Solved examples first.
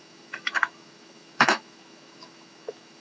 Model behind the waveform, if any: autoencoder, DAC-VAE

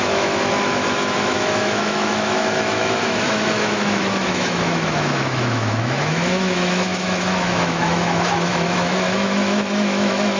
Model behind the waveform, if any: autoencoder, DAC-VAE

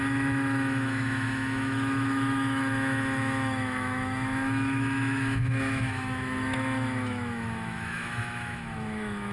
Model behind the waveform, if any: autoencoder, DAC-VAE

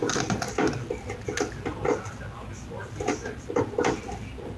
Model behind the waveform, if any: none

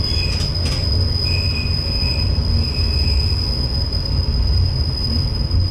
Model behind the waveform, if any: none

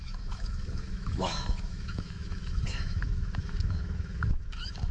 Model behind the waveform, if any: autoencoder, DAC-VAE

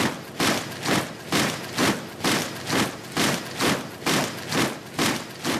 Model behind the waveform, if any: none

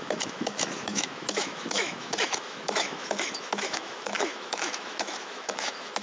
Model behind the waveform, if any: autoencoder, DAC-VAE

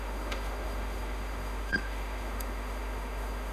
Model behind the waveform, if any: autoencoder, DAC-VAE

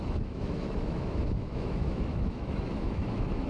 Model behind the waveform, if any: autoencoder, DAC-VAE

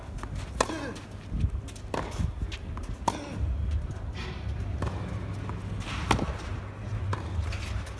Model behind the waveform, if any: none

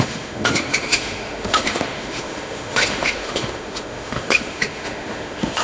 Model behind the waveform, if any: autoencoder, DAC-VAE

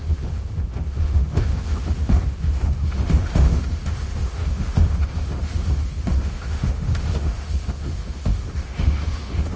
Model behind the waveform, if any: autoencoder, DAC-VAE